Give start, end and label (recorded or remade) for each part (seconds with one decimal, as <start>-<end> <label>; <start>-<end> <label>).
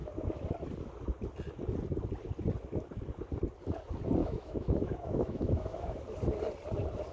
0.0-4.2 recorded; 4.2-6.0 remade; 6.0-7.1 recorded